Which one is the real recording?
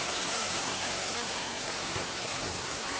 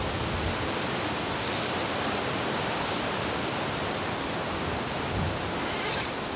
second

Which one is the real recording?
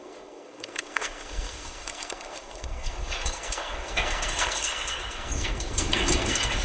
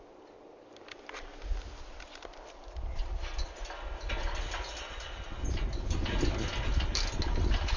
second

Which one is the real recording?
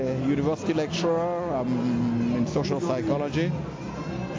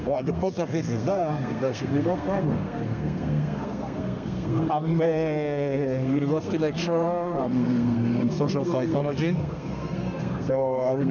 first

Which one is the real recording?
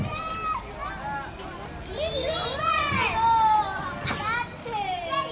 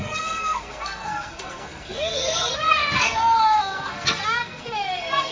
first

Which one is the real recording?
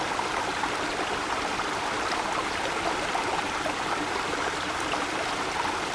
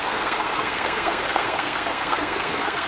first